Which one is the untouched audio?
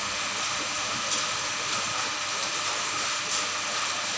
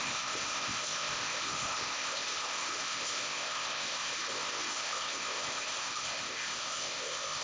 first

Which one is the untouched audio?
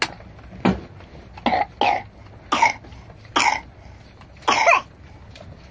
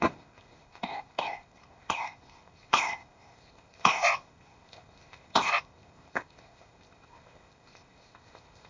first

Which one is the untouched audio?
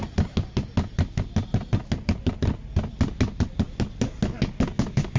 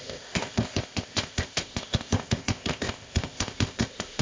first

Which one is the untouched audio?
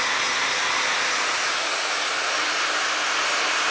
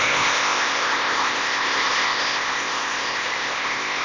first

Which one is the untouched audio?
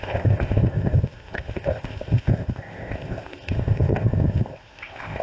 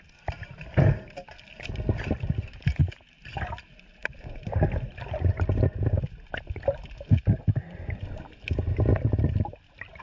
second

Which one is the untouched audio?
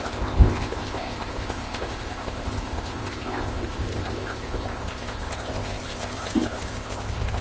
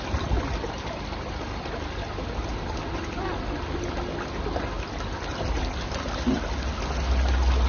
second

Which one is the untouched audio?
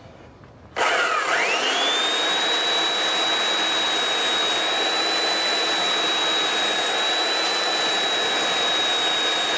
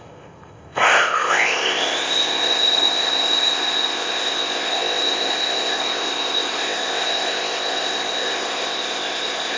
first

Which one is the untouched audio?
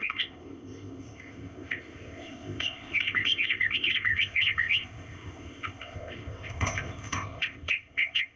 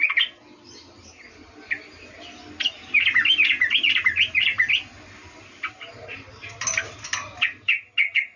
second